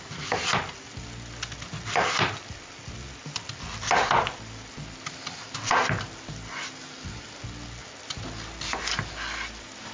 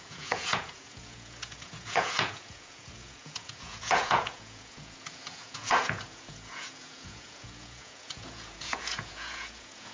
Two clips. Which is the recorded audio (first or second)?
first